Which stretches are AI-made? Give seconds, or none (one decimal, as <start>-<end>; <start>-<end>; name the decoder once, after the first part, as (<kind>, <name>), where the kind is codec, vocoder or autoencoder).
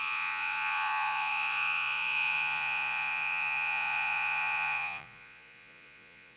0.0-6.4 (vocoder, Vocos)